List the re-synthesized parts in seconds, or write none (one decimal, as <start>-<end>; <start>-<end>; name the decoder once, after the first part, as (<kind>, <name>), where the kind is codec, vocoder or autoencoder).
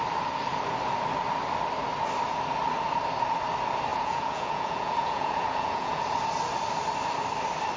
3.9-6.0 (vocoder, Vocos)